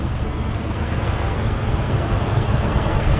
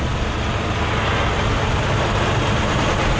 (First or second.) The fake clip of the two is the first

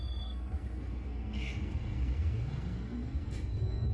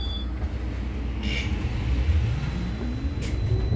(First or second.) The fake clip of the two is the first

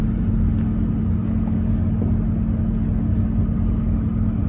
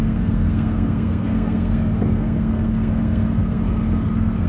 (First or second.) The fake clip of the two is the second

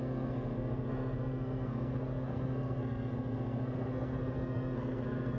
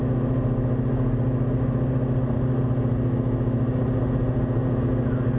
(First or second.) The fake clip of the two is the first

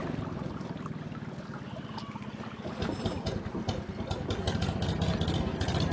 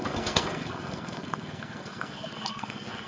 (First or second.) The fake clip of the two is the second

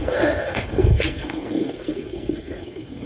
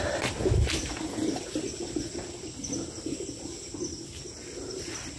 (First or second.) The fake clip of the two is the first